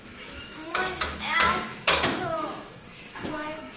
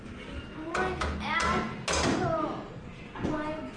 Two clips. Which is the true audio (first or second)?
second